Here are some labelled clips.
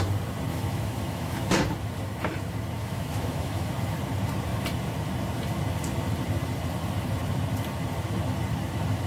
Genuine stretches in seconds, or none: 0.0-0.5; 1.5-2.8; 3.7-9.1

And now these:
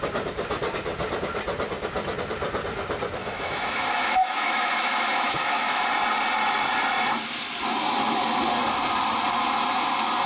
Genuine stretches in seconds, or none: 0.0-3.2; 5.8-10.3

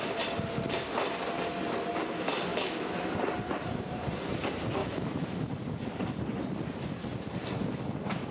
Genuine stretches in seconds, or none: 0.0-2.5; 3.1-4.8; 5.5-8.3